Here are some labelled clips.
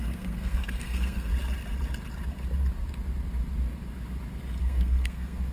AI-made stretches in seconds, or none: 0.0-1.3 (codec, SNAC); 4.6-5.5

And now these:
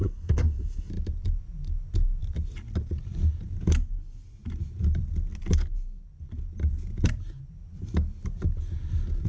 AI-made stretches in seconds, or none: 0.0-0.9 (codec, SNAC)

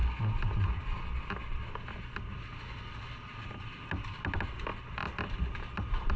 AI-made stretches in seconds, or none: none

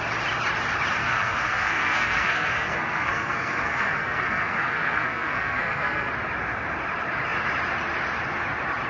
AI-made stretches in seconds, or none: 1.0-6.1 (codec, SNAC)

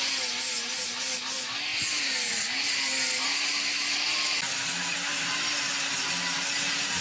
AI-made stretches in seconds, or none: none

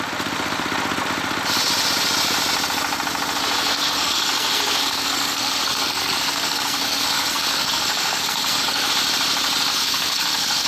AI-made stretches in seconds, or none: 3.7-8.9 (codec, SNAC); 9.7-10.7

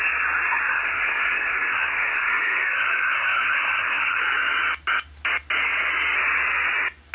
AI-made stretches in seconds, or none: 0.7-4.2 (codec, SNAC)

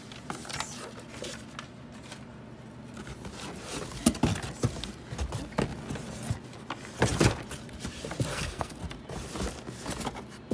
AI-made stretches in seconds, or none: 8.3-8.8 (codec, SNAC)